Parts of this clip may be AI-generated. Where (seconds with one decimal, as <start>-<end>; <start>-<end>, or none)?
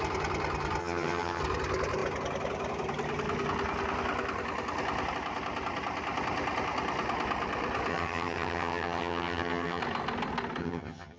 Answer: 0.8-1.4; 7.9-9.8; 10.6-11.2